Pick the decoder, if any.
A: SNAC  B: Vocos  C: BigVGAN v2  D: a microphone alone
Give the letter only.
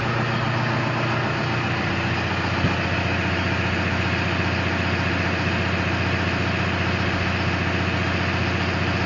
D